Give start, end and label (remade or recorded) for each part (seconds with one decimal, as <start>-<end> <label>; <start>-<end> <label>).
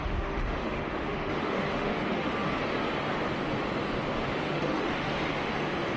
0.0-2.3 remade; 2.3-4.4 recorded; 4.4-5.1 remade; 5.1-6.0 recorded